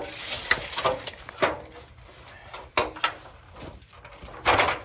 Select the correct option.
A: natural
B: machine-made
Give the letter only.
A